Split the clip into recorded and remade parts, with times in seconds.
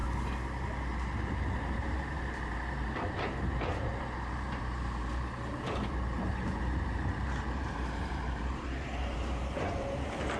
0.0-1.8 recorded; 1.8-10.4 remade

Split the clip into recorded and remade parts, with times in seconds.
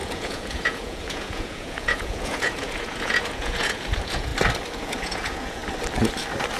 0.0-4.3 remade; 4.3-4.8 recorded; 4.8-5.6 remade; 5.6-6.6 recorded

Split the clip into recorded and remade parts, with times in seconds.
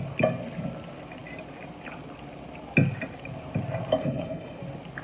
0.0-4.0 recorded; 4.0-4.6 remade; 4.6-5.0 recorded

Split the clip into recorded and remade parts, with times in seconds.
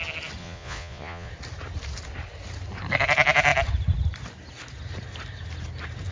0.0-0.4 recorded; 0.4-1.3 remade; 1.3-6.1 recorded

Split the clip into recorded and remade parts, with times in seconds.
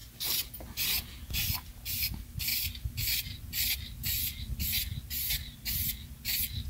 0.0-0.5 remade; 0.5-6.7 recorded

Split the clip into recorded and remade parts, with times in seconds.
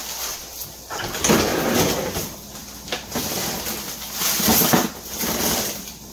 0.0-6.1 recorded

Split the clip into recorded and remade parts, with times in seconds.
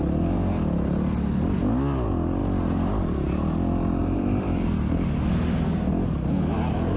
0.0-4.0 recorded; 4.0-5.9 remade; 5.9-7.0 recorded